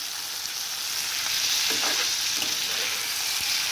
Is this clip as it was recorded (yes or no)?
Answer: yes